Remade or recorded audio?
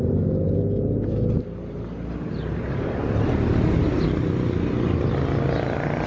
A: recorded